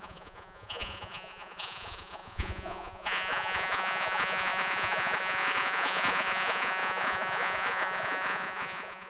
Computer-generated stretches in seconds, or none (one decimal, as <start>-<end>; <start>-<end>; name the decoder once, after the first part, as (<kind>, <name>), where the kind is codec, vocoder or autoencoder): 0.0-9.1 (vocoder, Vocos)